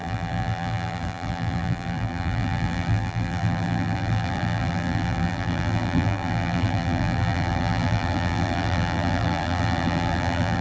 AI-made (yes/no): yes